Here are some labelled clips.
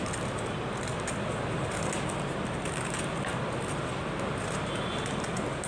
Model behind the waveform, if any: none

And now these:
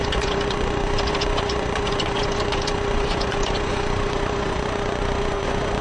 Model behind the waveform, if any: vocoder, Vocos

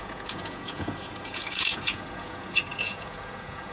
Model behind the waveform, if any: vocoder, Vocos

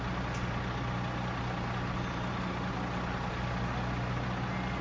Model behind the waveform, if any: none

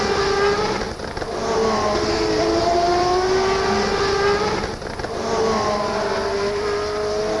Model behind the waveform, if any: none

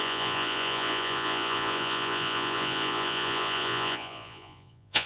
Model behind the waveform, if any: vocoder, Vocos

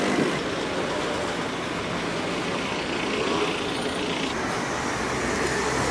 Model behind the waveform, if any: none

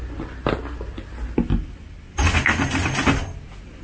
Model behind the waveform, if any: none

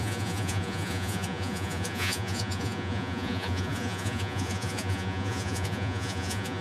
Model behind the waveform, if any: vocoder, Vocos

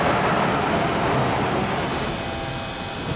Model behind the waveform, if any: none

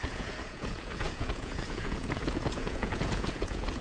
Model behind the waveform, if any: vocoder, Vocos